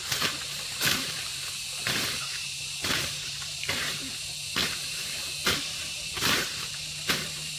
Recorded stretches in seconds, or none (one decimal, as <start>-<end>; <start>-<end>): 1.3-2.2; 4.0-4.8